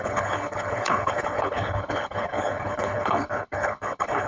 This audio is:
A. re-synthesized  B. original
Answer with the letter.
A